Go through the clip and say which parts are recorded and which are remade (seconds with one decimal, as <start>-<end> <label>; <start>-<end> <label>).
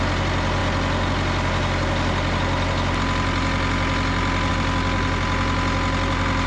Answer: 0.0-6.5 recorded